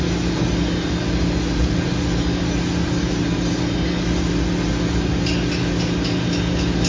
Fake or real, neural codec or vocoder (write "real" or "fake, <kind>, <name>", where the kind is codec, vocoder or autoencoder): real